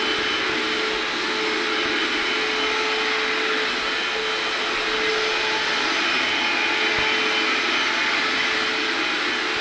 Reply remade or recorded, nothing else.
recorded